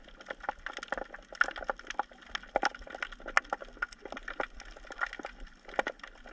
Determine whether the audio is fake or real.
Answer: real